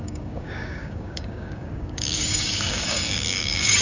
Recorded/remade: remade